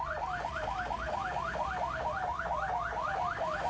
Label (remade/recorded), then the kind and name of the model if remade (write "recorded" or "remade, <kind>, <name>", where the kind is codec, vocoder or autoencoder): recorded